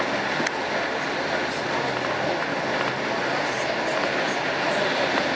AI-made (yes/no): no